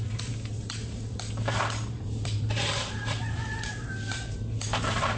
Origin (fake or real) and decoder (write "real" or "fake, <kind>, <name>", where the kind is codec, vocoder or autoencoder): fake, vocoder, BigVGAN v2